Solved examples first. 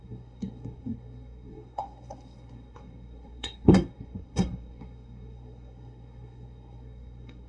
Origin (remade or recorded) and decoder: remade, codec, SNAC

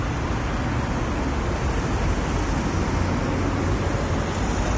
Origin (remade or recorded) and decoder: recorded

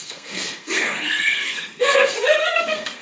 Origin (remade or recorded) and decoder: remade, codec, SNAC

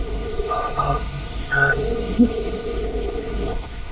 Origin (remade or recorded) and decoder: remade, codec, SNAC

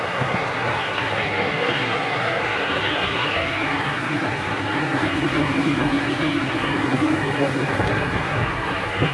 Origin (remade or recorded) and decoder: remade, codec, SNAC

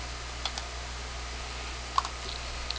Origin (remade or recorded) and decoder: recorded